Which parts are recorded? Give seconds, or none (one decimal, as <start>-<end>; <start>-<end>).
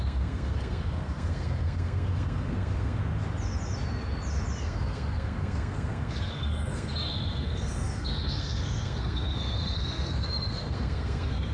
3.0-4.6